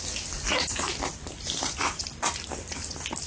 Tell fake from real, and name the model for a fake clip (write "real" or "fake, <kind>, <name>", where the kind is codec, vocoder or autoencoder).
real